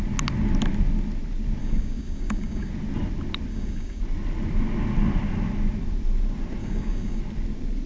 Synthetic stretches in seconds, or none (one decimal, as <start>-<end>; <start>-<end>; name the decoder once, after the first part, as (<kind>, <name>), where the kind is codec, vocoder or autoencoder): 1.6-2.7 (codec, DAC); 3.5-4.0; 6.6-7.2

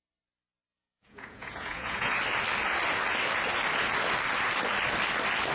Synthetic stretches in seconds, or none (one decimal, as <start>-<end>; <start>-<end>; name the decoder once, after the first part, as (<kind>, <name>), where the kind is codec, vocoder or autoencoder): 0.7-2.1 (vocoder, Vocos)

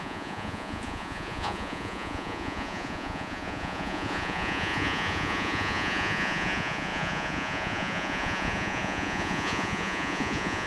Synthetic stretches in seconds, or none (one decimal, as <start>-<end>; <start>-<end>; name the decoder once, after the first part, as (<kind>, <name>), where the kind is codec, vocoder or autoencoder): 0.0-10.7 (vocoder, Vocos)

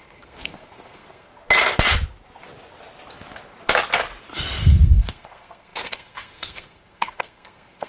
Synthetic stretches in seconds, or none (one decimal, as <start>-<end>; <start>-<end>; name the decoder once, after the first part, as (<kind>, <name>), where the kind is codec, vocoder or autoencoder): 0.0-1.3 (codec, SNAC); 4.6-7.9

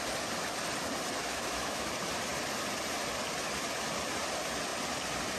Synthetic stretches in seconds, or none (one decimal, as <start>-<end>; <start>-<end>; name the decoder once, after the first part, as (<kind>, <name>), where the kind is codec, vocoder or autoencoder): 1.2-1.9 (autoencoder, DAC-VAE)

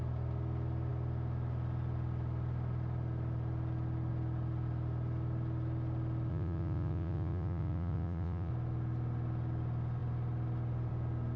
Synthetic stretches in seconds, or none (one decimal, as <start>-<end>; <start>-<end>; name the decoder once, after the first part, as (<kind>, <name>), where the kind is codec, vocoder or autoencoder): 6.3-8.5 (vocoder, Vocos)

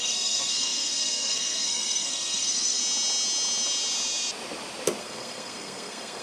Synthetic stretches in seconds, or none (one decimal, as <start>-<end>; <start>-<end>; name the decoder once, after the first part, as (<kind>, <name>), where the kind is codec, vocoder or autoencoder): 0.0-2.8 (codec, SNAC); 5.0-6.2

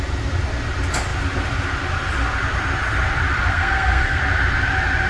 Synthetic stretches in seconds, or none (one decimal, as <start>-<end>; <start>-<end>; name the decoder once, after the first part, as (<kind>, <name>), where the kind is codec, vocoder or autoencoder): 3.5-4.2 (codec, SNAC)